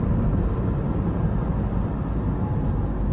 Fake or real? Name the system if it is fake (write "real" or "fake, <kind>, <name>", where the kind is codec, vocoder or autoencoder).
real